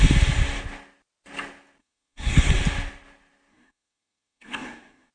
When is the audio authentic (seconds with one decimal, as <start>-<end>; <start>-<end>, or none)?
0.0-1.8; 2.5-3.5